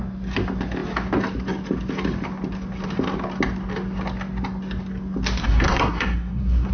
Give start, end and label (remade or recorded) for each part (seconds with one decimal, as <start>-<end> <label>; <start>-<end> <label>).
0.0-5.4 recorded; 5.4-6.7 remade